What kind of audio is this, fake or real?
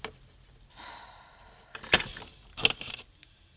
real